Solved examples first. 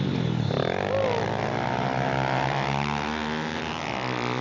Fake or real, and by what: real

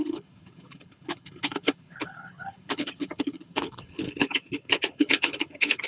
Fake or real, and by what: fake, codec, HILCodec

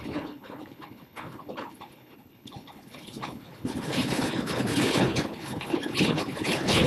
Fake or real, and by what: fake, codec, HILCodec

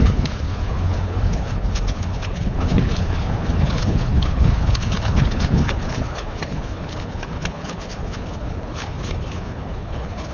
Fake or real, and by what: fake, codec, HILCodec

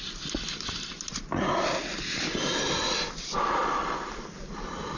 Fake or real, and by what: real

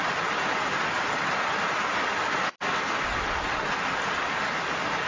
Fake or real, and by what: real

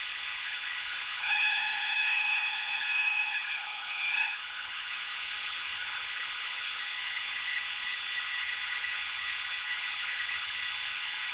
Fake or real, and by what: fake, codec, HILCodec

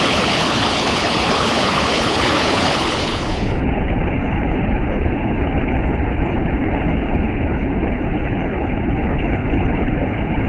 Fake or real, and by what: fake, codec, HILCodec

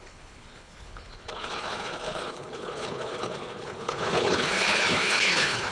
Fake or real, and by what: fake, codec, HILCodec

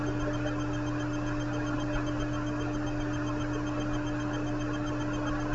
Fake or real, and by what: real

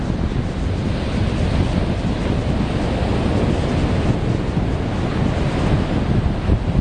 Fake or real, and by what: real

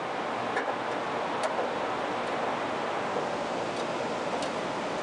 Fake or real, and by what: real